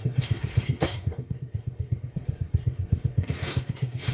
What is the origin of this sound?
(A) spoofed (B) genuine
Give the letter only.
A